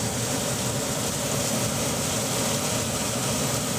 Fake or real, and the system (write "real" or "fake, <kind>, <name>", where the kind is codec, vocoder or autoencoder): real